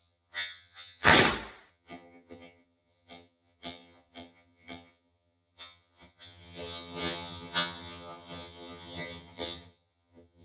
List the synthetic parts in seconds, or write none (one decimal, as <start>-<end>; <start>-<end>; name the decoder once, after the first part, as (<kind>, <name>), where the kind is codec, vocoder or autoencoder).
0.0-1.1 (vocoder, HiFi-GAN); 1.7-10.4